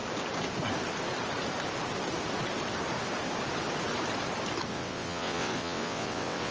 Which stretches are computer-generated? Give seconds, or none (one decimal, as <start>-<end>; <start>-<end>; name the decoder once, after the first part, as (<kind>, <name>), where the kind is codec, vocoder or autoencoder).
4.7-6.5 (vocoder, WaveNeXt)

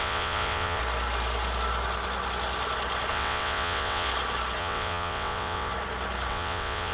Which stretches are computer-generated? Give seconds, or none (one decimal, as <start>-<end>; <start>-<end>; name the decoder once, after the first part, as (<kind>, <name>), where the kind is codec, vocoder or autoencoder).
0.0-0.8 (vocoder, WaveNeXt); 3.1-4.1; 4.6-5.7; 6.3-6.9